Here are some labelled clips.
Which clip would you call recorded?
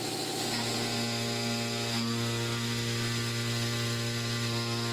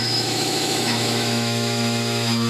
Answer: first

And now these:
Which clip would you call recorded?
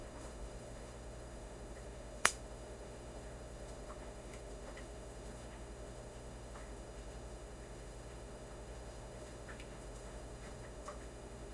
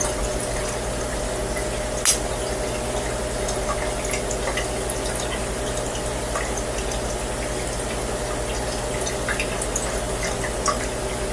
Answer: second